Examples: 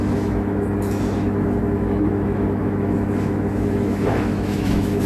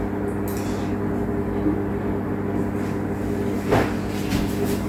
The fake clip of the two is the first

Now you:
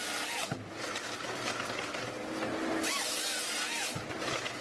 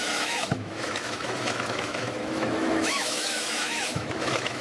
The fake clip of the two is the second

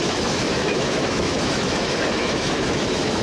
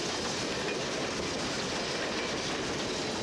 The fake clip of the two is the first